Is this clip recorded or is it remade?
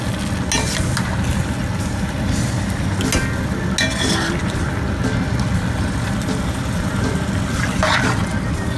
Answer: recorded